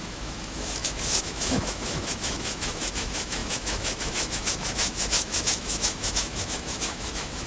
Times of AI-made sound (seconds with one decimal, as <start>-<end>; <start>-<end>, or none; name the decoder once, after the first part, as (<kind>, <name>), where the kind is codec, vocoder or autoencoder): 0.0-7.5 (autoencoder, DAC-VAE)